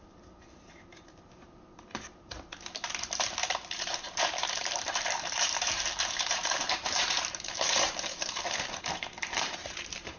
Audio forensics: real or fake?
fake